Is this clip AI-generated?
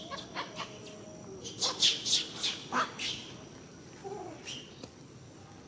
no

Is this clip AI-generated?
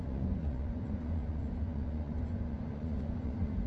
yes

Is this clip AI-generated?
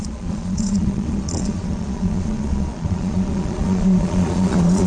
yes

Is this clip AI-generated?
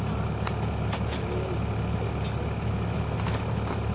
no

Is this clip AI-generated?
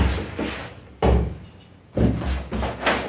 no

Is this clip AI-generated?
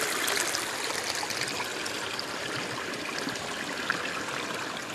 no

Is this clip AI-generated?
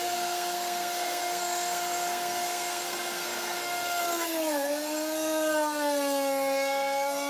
yes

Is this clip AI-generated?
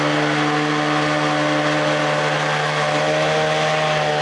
no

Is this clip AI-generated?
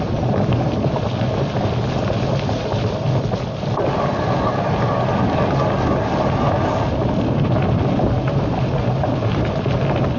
no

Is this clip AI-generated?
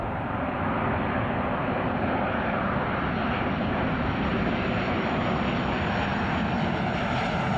no